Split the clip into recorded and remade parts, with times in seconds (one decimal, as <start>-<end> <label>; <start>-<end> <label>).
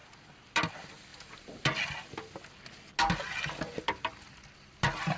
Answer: 0.0-5.2 recorded